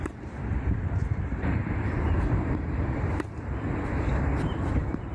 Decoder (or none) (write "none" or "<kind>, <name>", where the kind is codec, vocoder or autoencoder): vocoder, BigVGAN v2